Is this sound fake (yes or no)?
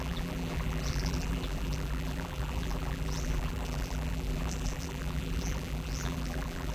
yes